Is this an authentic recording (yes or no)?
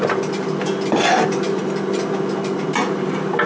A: yes